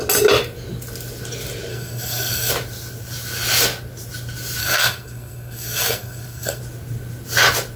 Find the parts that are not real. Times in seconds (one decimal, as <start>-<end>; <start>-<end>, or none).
1.7-2.5; 4.6-6.6